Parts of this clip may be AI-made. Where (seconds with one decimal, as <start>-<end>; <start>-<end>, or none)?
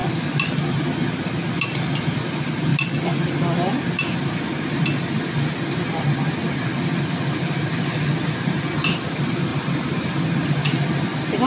9.5-10.0